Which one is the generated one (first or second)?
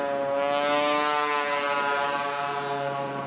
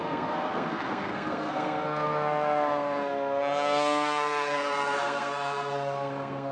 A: second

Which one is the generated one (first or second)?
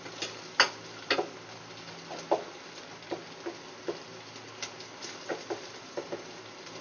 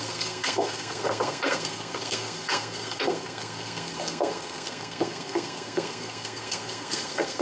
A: second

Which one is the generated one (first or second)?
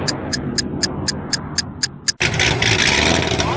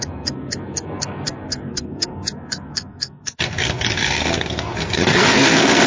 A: second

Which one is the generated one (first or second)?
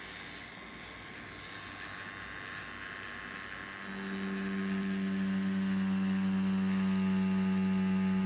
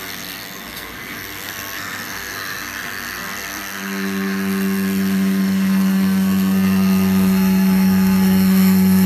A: second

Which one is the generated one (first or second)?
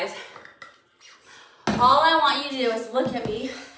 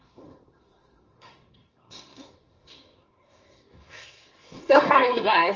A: second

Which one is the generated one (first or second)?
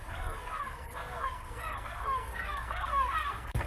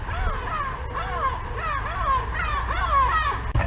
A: first